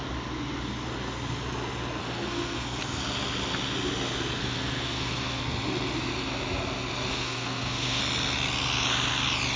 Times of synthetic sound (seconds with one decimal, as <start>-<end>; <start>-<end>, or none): 2.0-2.8; 4.4-5.4; 7.1-8.0